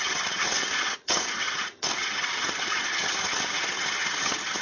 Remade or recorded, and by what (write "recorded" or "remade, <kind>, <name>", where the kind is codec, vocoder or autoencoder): remade, vocoder, HiFi-GAN